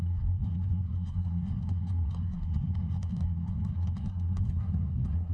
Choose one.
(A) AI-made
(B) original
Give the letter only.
A